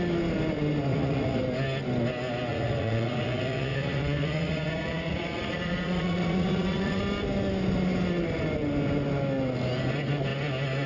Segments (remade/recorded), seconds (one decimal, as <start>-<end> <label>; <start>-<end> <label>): 0.0-0.9 recorded; 0.9-1.4 remade; 1.4-2.5 recorded; 2.5-7.0 remade; 7.0-10.9 recorded